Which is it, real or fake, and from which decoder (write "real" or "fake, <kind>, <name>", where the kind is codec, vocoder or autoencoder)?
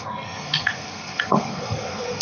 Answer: fake, codec, SNAC